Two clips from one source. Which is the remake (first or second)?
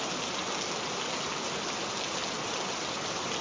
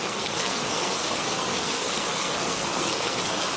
second